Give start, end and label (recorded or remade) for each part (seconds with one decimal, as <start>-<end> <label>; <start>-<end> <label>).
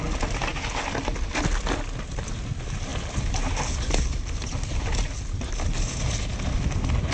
0.0-7.1 recorded